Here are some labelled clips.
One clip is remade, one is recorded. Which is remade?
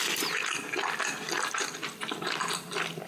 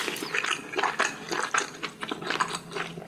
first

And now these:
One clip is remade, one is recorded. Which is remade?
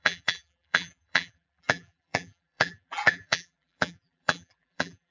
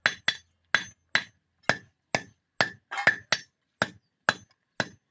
first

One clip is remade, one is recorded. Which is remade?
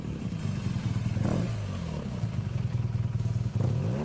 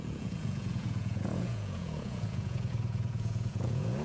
second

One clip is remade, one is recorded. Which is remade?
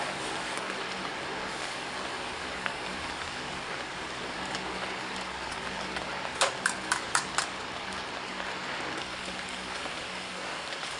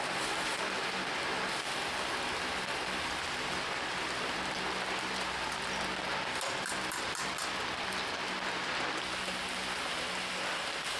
first